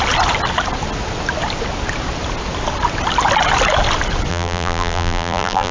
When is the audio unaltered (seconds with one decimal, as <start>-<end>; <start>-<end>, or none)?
0.0-4.3